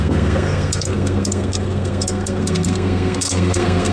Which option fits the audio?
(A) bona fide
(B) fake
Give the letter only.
B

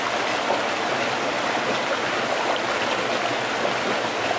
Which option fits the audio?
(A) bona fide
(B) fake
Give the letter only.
A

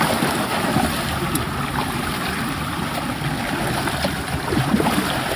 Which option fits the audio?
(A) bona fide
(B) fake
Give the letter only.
A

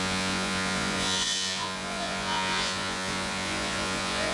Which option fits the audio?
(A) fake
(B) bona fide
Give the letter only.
A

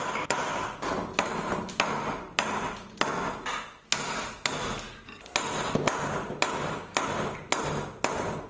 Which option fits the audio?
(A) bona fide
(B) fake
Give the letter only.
A